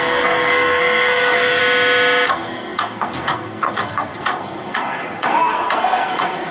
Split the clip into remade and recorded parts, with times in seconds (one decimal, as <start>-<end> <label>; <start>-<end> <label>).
0.0-1.6 remade; 1.6-2.3 recorded; 2.3-6.5 remade